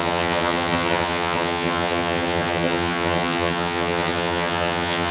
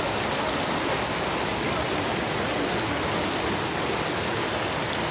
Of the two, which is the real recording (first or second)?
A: second